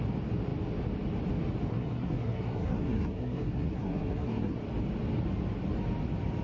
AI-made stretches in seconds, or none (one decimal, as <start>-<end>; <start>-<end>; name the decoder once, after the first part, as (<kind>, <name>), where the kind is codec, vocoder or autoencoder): 1.7-4.6 (codec, SNAC)